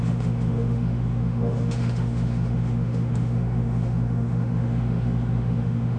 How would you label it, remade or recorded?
remade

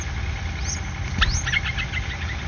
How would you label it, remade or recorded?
recorded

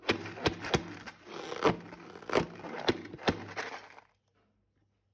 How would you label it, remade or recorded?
recorded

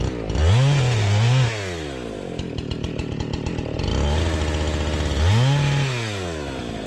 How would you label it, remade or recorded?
recorded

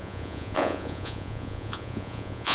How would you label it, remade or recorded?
remade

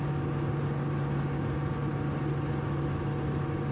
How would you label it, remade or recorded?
recorded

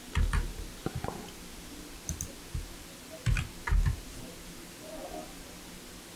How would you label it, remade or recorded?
recorded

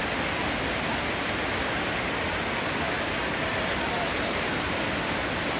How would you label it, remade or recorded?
recorded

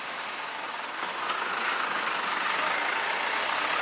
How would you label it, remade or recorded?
recorded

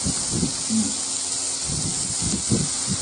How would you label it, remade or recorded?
recorded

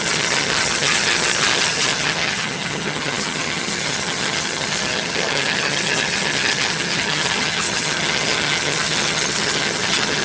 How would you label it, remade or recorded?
remade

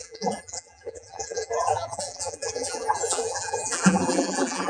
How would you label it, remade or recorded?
remade